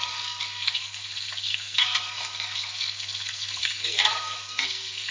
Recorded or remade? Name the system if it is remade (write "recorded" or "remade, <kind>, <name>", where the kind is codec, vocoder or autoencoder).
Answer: remade, codec, SNAC